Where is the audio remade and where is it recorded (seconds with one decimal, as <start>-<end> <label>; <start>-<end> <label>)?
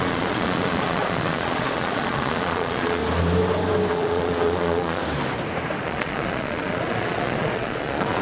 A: 0.0-3.0 remade; 3.0-3.9 recorded; 3.9-5.0 remade; 5.0-5.8 recorded; 5.8-8.2 remade